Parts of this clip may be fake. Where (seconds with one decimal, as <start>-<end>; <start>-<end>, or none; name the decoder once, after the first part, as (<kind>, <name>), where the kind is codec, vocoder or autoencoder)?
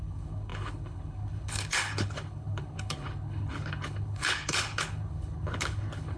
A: 0.0-6.2 (codec, HILCodec)